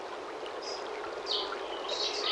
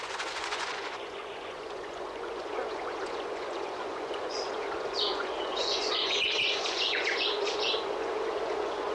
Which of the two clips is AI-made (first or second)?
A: second